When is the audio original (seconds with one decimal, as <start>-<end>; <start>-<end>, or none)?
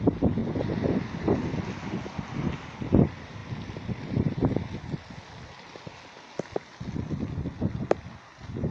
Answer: 0.0-8.7